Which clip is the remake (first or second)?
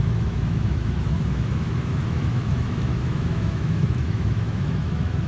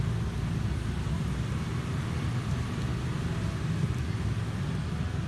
first